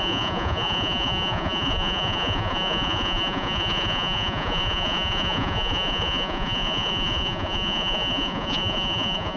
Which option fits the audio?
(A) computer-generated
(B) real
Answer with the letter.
A